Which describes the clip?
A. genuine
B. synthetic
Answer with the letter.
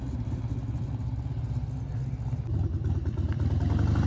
A